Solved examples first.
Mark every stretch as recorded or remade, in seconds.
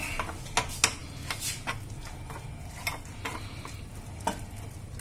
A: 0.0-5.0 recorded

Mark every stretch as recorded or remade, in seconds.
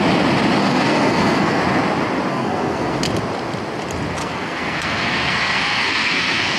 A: 0.0-0.6 recorded; 0.6-1.6 remade; 1.6-2.3 recorded; 2.3-3.0 remade; 3.0-4.2 recorded; 4.2-6.6 remade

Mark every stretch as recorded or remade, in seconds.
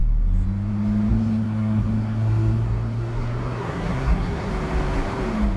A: 0.0-1.1 recorded; 1.1-4.5 remade; 4.5-5.6 recorded